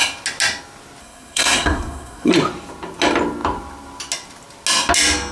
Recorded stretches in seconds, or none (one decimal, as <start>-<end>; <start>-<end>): 0.0-1.0; 2.3-5.3